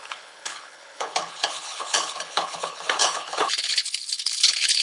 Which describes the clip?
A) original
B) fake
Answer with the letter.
B